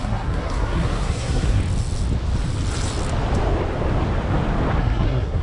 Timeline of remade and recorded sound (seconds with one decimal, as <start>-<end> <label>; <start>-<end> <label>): 0.0-1.6 remade; 1.6-4.8 recorded; 4.8-5.4 remade